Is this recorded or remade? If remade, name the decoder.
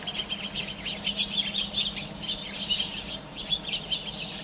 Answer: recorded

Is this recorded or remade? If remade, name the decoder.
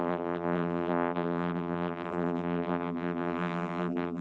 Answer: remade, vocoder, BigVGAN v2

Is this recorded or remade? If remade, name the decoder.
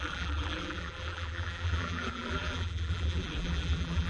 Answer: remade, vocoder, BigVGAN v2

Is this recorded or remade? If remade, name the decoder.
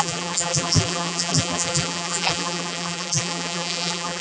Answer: remade, vocoder, BigVGAN v2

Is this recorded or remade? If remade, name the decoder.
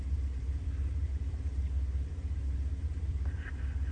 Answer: recorded